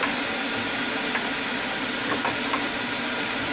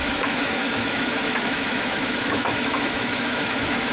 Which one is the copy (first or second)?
second